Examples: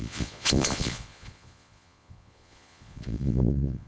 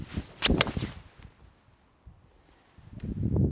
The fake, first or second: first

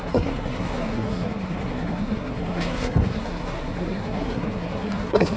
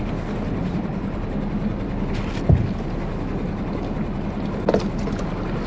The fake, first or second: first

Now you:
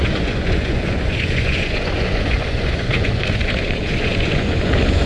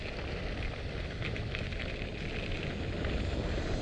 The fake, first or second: first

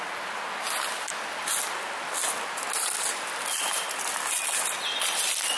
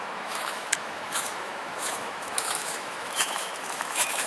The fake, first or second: second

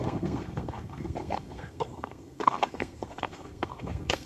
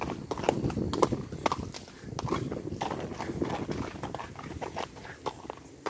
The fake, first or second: first